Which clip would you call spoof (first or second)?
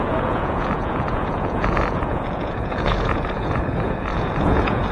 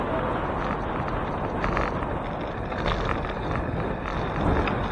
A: first